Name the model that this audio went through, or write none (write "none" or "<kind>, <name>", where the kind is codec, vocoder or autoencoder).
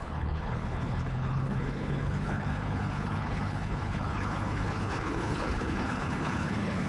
codec, HILCodec